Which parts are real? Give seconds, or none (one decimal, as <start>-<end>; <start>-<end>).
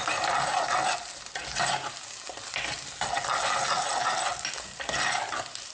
0.0-5.7